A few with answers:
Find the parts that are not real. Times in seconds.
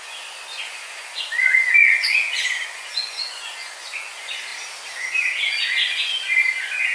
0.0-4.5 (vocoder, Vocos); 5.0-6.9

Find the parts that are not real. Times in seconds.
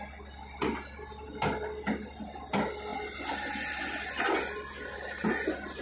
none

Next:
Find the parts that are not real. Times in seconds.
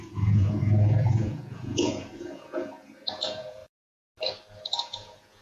0.0-3.6 (vocoder, Vocos); 4.6-5.4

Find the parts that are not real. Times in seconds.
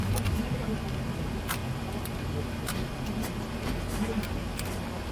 none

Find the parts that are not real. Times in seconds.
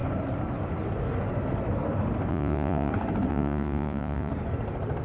2.3-2.9 (vocoder, Vocos); 3.3-4.3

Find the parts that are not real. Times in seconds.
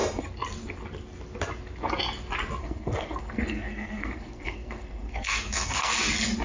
2.6-5.9 (codec, SNAC)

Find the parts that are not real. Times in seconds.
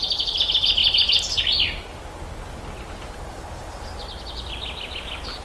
none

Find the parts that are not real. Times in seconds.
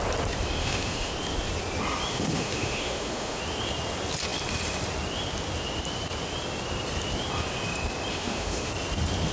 0.6-1.1 (autoencoder, DAC-VAE); 2.1-3.4; 8.1-8.7